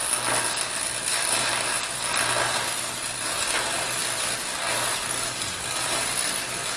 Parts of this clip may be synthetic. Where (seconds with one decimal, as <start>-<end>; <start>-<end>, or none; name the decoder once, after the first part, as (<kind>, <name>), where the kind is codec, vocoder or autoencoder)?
none